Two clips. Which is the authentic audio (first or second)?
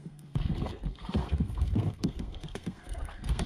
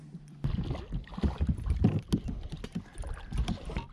second